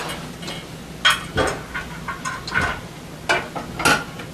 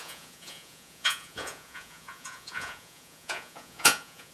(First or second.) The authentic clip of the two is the first